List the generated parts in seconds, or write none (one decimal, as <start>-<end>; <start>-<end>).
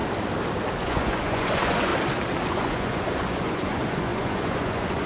0.8-1.9; 2.5-5.1